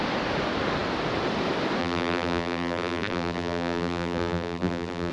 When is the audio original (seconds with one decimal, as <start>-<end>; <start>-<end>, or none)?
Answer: 0.0-1.8